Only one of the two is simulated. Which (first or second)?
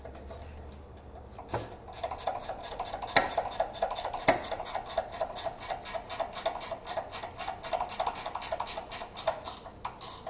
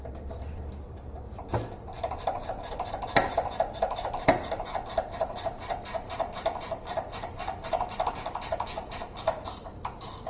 second